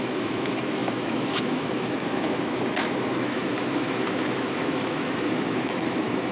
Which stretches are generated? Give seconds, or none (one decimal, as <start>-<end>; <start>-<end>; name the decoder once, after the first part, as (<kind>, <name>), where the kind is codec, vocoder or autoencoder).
0.0-6.3 (autoencoder, DAC-VAE)